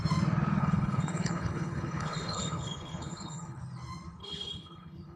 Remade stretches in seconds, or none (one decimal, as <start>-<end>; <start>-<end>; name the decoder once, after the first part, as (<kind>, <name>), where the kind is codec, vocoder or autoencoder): 0.6-3.6 (codec, HILCodec); 4.2-5.2